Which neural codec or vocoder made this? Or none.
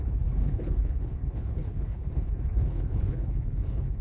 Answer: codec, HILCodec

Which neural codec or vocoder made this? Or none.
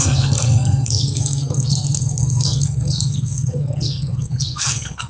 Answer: codec, SNAC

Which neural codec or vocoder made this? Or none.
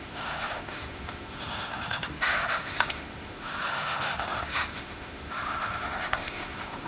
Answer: autoencoder, DAC-VAE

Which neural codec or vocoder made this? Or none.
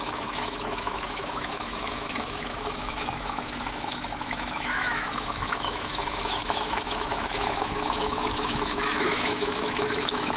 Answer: autoencoder, DAC-VAE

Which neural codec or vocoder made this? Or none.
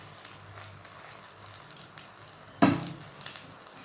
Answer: none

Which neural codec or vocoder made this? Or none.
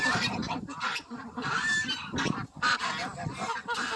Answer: vocoder, BigVGAN v2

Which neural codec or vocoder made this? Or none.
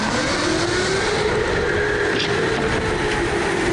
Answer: none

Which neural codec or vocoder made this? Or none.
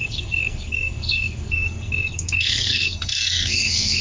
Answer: codec, SNAC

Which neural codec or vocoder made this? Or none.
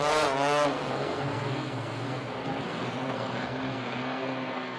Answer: codec, SNAC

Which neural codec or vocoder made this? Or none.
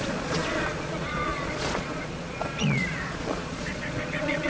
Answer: vocoder, Vocos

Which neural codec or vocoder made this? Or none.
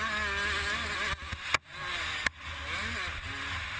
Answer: none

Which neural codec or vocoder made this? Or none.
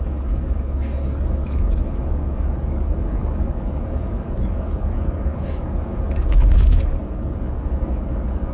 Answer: codec, DAC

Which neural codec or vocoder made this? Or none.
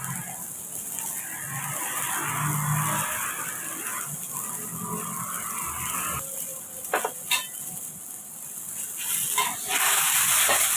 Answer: none